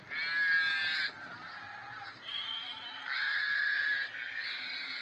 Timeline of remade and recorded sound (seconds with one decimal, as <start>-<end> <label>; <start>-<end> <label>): 0.0-5.0 recorded